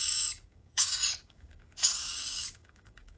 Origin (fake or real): fake